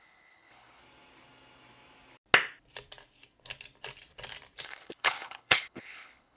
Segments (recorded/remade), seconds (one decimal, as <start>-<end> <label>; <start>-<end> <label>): 0.0-0.8 remade; 0.8-4.6 recorded; 4.6-6.4 remade